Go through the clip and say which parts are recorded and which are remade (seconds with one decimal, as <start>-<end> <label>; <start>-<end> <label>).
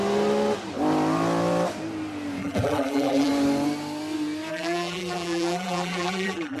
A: 0.0-2.4 recorded; 2.4-3.3 remade; 3.3-4.5 recorded; 4.5-6.6 remade